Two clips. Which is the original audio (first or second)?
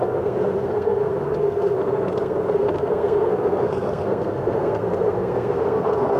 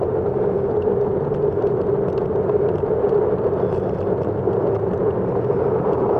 second